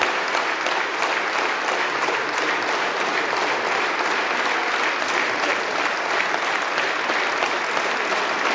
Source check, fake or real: real